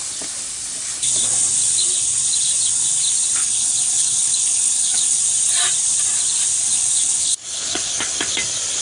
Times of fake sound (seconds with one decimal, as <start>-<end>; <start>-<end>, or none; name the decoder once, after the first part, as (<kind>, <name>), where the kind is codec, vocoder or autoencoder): 3.4-5.2 (codec, HILCodec); 6.6-8.3